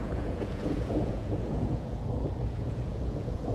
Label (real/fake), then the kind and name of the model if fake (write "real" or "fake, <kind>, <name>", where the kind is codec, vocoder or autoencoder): fake, vocoder, Vocos